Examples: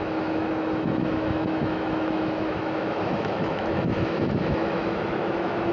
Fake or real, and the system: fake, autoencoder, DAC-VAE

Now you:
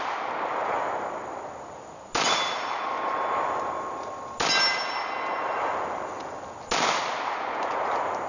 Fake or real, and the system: real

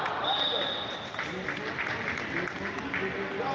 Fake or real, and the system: real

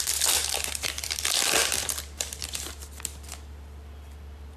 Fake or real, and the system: fake, vocoder, BigVGAN v2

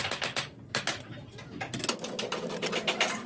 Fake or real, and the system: real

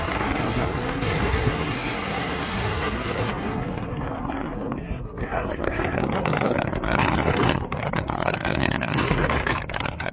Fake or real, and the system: fake, codec, SNAC